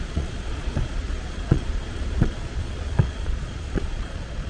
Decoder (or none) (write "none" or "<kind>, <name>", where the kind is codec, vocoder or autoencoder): vocoder, Vocos